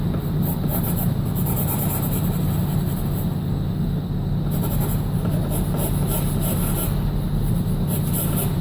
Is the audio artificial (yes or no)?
yes